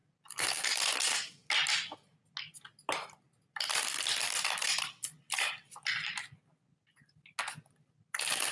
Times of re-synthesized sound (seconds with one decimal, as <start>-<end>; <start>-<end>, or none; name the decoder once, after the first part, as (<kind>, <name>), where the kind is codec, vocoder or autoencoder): 4.6-5.5 (vocoder, BigVGAN v2)